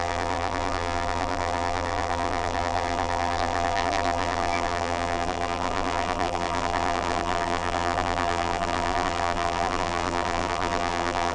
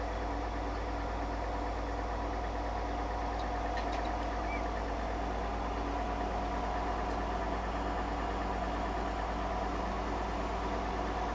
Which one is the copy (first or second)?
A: first